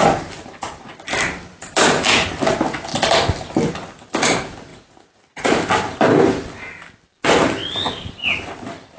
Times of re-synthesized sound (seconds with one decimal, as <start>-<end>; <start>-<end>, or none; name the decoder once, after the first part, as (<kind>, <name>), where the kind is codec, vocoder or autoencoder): 4.7-5.6 (vocoder, Vocos)